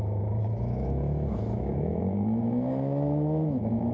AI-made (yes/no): yes